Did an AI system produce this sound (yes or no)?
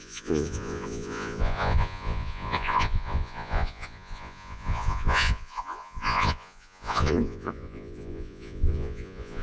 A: yes